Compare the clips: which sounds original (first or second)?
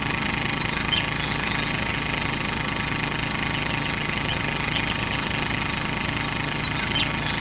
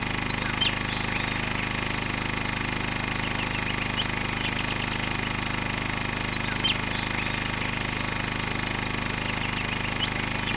second